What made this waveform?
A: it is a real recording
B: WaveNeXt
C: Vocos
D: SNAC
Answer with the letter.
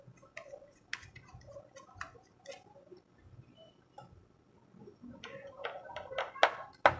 A